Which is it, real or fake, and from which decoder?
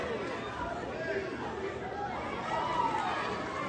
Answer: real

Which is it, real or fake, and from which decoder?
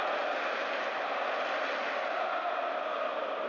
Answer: real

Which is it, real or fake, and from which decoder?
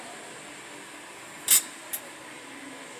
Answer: real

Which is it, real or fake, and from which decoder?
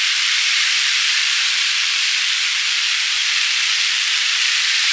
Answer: fake, vocoder, BigVGAN v2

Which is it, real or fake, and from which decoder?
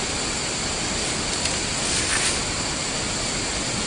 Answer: real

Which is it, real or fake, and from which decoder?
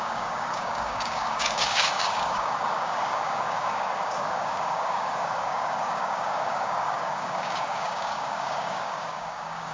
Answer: fake, codec, DAC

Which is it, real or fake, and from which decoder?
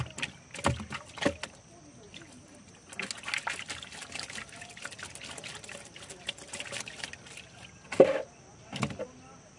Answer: real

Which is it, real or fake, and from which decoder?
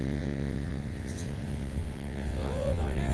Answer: fake, vocoder, WaveNeXt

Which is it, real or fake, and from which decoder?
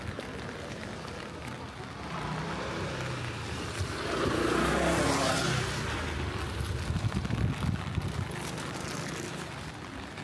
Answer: real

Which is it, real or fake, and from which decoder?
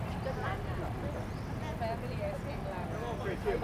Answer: real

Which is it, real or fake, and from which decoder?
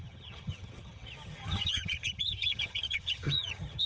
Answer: fake, vocoder, HiFi-GAN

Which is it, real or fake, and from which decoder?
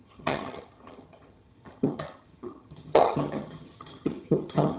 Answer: fake, vocoder, HiFi-GAN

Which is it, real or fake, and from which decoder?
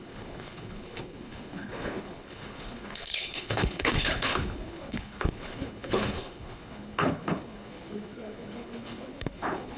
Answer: fake, codec, HILCodec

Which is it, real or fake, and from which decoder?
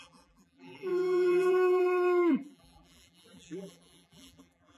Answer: fake, vocoder, BigVGAN v2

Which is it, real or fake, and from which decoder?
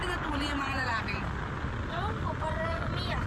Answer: real